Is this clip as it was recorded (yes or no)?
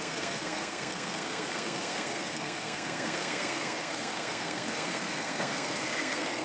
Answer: no